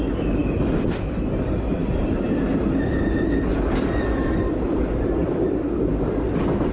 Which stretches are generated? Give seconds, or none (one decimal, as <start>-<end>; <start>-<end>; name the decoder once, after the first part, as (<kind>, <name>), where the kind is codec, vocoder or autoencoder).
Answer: 0.4-1.2 (vocoder, BigVGAN v2); 1.8-3.0; 5.2-5.9